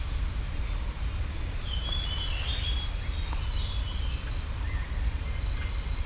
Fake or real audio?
real